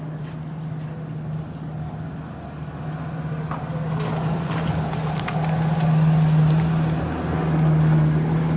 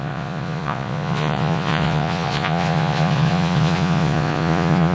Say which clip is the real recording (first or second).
first